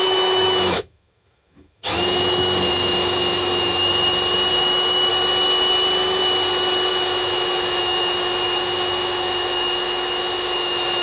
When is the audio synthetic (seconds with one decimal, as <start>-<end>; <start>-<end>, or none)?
0.0-3.9; 4.5-5.1; 6.9-11.0